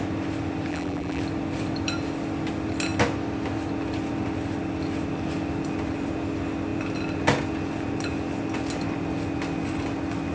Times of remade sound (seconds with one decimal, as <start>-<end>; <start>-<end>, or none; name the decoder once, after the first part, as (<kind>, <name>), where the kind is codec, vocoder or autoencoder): 0.7-1.2 (vocoder, BigVGAN v2)